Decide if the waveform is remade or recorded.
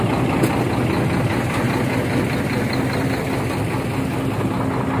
recorded